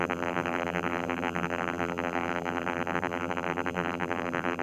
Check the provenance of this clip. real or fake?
fake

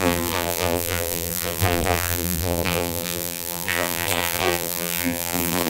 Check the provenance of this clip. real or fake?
fake